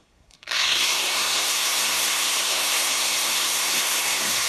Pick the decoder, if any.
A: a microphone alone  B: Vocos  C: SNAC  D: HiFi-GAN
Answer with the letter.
C